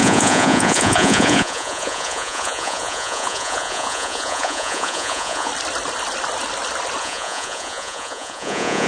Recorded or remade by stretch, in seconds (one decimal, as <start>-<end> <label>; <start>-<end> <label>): 0.0-5.5 remade; 5.5-7.0 recorded; 7.0-8.9 remade